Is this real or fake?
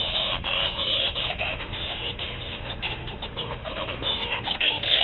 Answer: fake